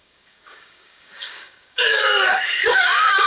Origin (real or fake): fake